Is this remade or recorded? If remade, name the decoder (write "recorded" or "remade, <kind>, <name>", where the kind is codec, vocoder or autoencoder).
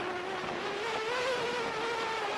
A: recorded